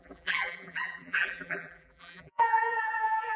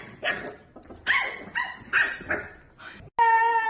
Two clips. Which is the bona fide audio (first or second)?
second